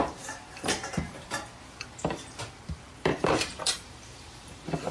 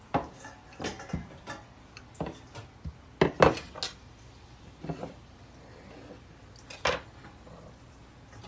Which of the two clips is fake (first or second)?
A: first